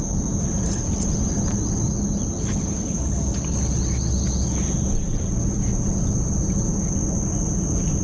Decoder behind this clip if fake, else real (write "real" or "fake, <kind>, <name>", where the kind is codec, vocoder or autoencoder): real